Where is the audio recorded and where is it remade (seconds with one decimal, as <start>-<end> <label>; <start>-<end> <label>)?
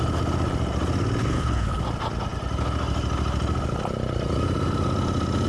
0.0-1.2 recorded; 1.2-1.8 remade; 1.8-5.5 recorded